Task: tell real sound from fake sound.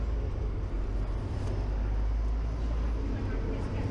real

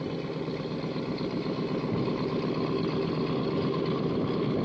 real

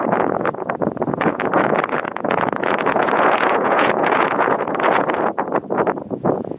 fake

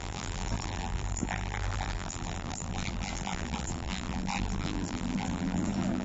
fake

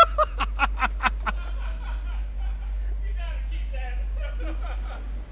real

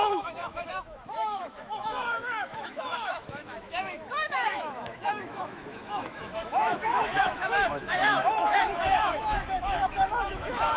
fake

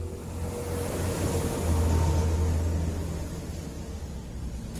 real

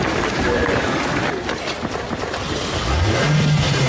real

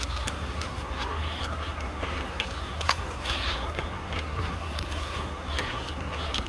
fake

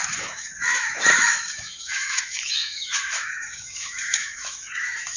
fake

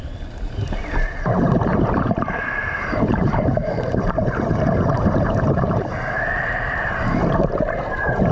fake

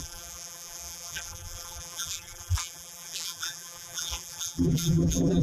fake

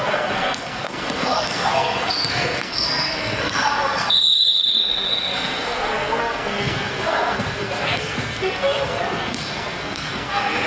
fake